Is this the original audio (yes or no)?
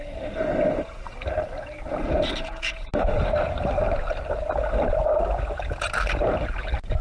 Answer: yes